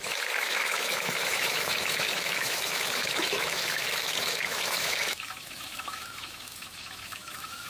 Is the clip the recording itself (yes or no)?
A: no